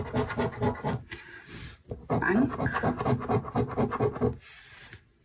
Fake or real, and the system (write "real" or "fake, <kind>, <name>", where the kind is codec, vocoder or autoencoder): real